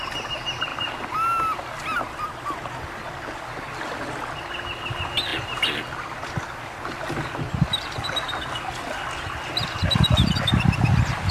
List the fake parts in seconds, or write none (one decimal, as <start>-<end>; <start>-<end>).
none